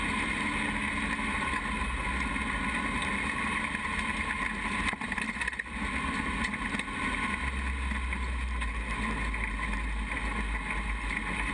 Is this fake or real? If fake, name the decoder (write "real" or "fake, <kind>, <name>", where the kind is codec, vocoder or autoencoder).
real